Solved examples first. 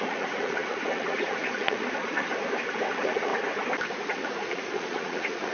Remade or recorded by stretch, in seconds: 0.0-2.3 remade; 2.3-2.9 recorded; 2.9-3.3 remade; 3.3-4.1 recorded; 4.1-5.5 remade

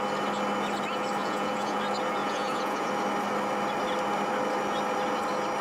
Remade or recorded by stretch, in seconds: 0.0-1.2 recorded; 1.2-1.8 remade; 1.8-2.2 recorded; 2.2-2.9 remade; 2.9-5.6 recorded

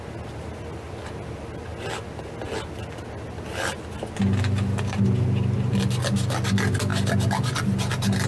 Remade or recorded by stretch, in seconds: 0.0-8.3 recorded